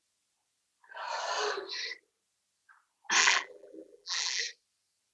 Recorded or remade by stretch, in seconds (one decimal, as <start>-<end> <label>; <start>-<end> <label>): 0.0-3.2 recorded; 3.2-4.4 remade; 4.4-5.1 recorded